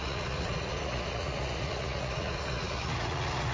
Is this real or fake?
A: fake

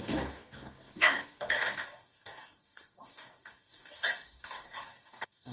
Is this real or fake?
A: fake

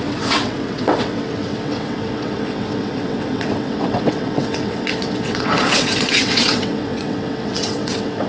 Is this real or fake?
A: fake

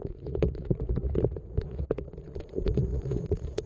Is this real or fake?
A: fake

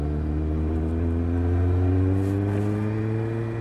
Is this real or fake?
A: real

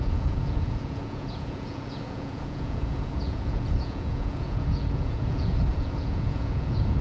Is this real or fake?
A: fake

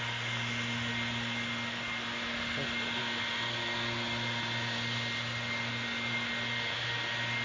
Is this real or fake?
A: real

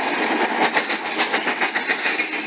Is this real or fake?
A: real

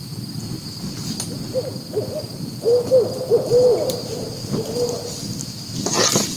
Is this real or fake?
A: real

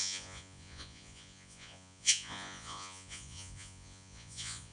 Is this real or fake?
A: fake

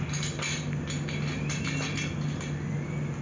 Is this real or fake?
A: real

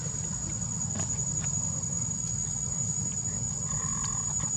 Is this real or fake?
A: real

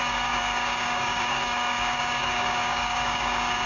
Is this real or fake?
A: fake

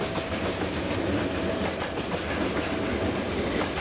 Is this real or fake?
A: real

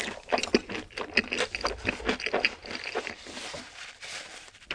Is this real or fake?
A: real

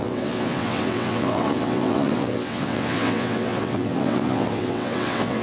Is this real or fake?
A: fake